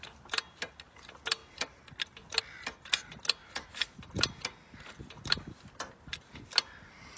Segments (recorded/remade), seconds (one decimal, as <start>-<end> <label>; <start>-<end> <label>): 0.0-7.2 recorded